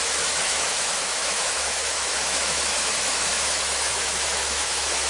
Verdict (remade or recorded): remade